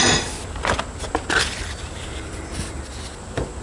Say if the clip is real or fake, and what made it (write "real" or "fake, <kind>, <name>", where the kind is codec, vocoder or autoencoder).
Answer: real